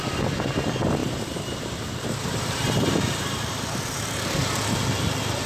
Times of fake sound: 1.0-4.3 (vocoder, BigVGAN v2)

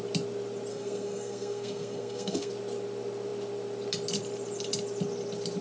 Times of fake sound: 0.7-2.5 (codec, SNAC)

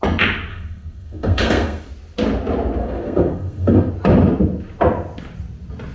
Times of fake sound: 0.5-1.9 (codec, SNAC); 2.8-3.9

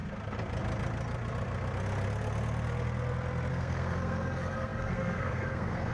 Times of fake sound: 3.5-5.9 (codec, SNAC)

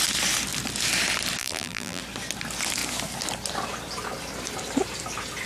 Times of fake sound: 1.4-2.0 (vocoder, BigVGAN v2)